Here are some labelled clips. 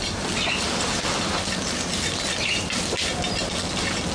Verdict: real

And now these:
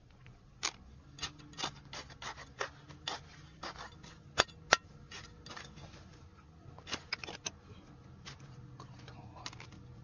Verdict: real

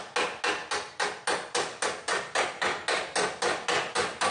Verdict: real